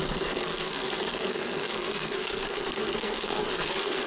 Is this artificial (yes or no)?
yes